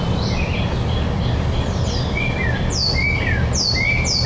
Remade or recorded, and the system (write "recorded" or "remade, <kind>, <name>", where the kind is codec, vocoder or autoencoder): recorded